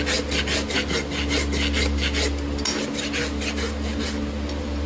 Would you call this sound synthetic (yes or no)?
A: no